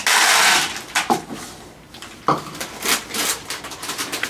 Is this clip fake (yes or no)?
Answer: no